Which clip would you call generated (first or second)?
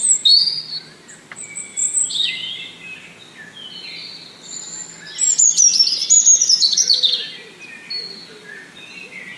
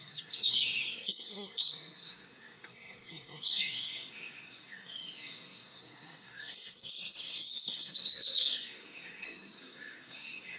second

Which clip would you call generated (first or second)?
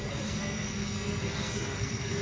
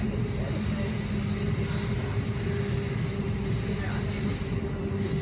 first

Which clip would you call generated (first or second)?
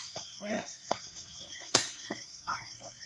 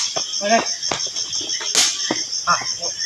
first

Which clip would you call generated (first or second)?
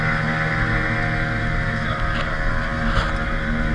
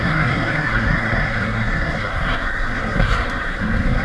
second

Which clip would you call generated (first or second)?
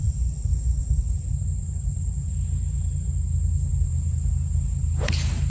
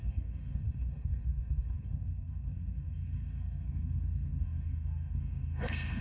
second